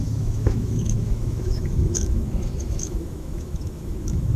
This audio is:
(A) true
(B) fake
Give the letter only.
B